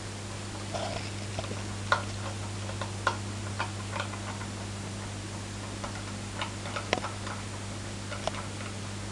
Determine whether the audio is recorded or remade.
recorded